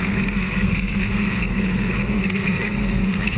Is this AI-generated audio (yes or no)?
yes